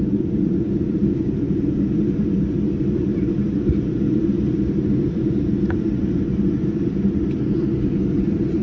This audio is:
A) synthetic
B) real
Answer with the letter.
A